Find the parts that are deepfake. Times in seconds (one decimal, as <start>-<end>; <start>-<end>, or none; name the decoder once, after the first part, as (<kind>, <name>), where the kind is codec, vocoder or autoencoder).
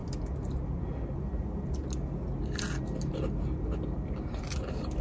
none